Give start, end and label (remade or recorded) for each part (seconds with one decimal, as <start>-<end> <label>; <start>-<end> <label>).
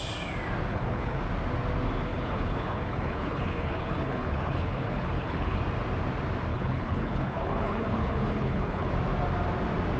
0.0-0.7 recorded; 0.7-1.2 remade; 1.2-2.1 recorded; 2.1-5.6 remade; 5.6-6.5 recorded; 6.5-8.9 remade; 8.9-10.0 recorded